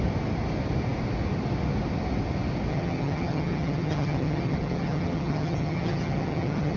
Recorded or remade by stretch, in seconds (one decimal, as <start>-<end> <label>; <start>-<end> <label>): 0.0-2.7 recorded; 2.7-6.8 remade